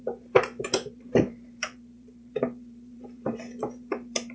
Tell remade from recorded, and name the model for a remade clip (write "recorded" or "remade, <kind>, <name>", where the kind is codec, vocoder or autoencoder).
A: remade, vocoder, BigVGAN v2